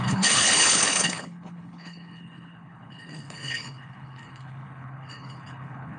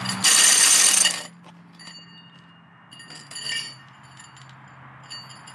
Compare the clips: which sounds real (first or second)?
second